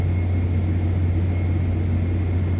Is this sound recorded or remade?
recorded